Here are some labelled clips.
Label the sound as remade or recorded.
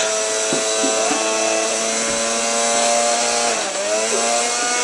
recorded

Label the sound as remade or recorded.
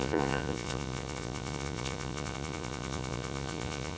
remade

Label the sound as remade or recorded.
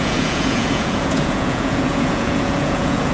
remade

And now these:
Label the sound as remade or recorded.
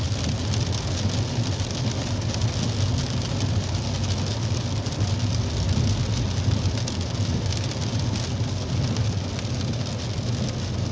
recorded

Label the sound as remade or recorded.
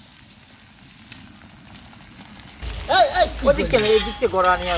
recorded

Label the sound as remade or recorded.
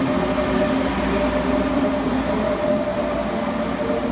recorded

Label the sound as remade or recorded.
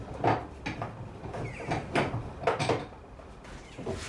recorded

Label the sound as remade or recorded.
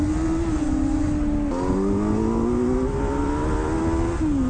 recorded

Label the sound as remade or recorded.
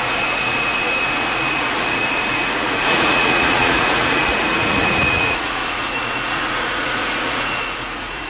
remade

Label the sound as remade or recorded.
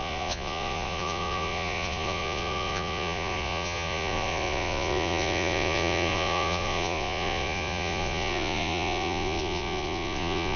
remade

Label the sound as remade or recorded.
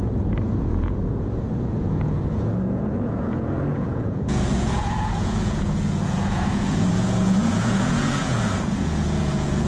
remade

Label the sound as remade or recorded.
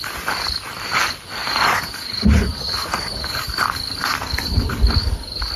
recorded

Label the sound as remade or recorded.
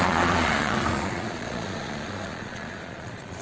remade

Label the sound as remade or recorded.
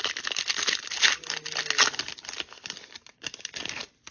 recorded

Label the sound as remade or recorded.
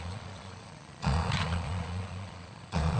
remade